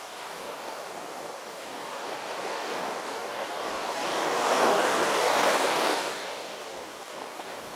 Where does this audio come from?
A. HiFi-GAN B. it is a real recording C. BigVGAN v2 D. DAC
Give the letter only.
D